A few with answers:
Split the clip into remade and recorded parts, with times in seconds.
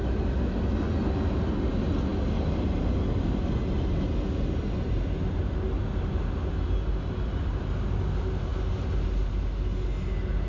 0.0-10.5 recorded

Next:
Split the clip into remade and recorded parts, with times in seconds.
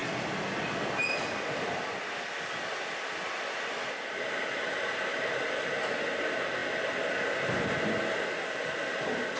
0.0-9.4 recorded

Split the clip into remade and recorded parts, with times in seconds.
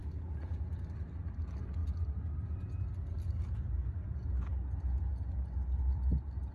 0.0-6.5 recorded